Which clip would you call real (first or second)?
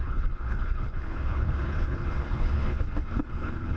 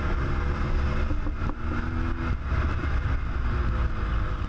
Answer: second